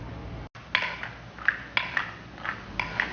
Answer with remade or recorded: recorded